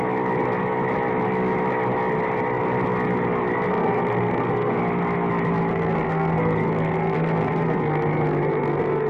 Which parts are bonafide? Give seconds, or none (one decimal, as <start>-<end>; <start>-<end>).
0.0-3.7; 4.8-5.7